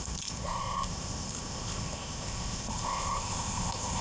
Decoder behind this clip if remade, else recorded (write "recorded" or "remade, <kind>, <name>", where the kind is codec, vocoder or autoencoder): remade, codec, ZipCodec